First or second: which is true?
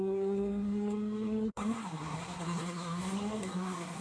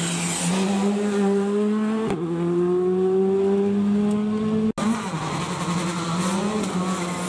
second